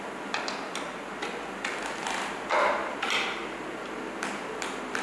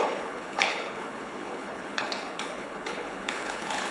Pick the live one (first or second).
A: first